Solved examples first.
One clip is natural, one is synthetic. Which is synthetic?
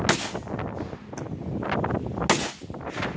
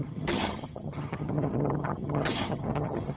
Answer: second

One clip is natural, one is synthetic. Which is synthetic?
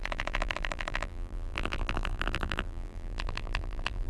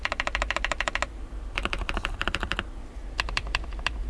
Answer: first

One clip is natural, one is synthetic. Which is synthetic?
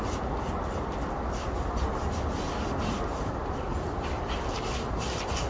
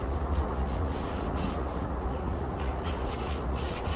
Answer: second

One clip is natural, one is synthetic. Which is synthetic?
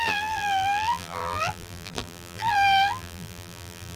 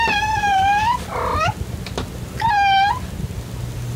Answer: first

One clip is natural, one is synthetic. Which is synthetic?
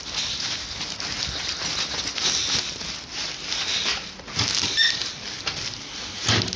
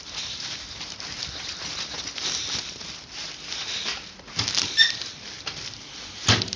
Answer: second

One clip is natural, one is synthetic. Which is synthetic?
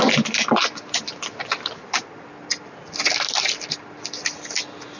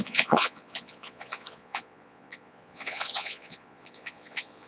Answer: second